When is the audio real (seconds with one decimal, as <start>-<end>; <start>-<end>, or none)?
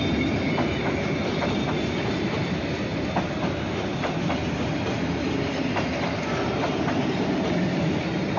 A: 0.0-8.4